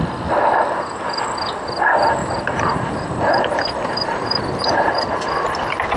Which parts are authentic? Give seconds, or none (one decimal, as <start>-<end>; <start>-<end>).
0.0-2.2; 4.8-6.0